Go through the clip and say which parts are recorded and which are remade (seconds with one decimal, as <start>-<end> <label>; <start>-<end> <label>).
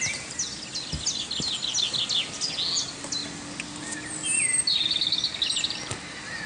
0.0-6.5 recorded